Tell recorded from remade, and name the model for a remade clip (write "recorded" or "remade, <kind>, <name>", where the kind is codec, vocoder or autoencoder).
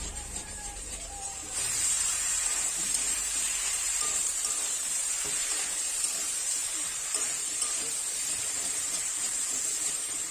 remade, vocoder, BigVGAN v2